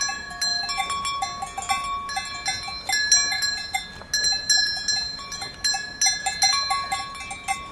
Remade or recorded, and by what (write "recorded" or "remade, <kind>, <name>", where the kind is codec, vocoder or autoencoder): recorded